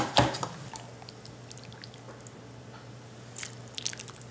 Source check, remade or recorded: recorded